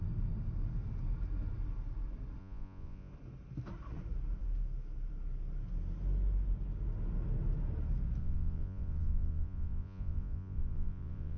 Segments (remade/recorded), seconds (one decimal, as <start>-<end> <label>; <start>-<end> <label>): 0.0-2.4 recorded; 2.4-3.1 remade; 3.1-8.2 recorded; 8.2-11.4 remade